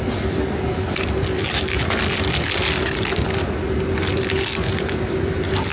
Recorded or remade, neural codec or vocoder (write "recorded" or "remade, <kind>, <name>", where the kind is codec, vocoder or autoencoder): recorded